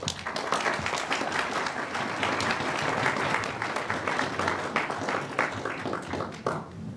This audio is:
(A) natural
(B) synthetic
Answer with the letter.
A